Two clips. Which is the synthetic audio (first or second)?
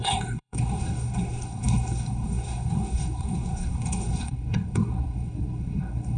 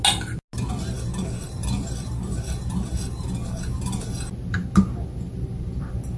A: first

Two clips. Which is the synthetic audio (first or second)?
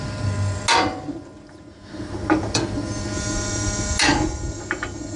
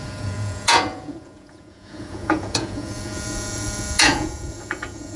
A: second